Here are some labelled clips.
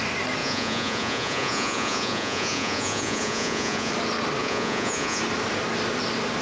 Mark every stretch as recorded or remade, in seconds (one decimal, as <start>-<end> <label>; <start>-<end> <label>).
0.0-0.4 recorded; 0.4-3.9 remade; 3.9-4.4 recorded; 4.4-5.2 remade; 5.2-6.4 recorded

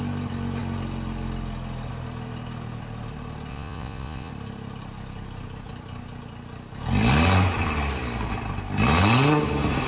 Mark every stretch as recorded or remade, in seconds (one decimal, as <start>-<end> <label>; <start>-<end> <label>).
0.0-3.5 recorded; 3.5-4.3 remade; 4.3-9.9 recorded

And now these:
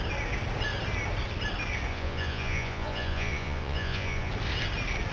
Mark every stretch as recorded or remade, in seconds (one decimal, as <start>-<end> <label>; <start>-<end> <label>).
0.0-1.9 recorded; 1.9-4.3 remade; 4.3-5.1 recorded